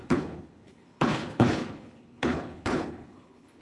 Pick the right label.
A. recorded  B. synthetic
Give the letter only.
B